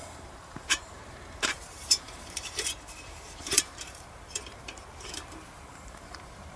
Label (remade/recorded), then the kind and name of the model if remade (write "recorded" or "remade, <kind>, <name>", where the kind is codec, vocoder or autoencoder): remade, vocoder, BigVGAN v2